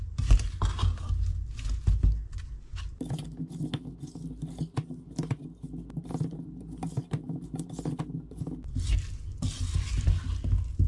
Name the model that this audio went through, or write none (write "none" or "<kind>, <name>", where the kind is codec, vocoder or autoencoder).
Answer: none